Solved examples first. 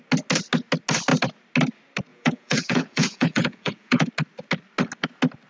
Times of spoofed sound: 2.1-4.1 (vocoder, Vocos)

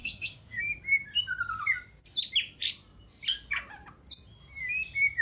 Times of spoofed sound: 0.0-0.6 (autoencoder, DAC-VAE)

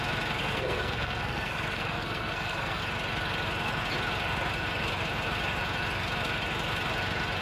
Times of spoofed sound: 0.4-2.8 (codec, SNAC)

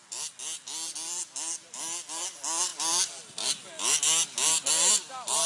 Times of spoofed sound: none

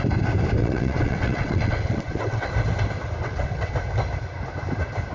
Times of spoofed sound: 0.6-2.5 (vocoder, WaveNeXt); 3.2-3.7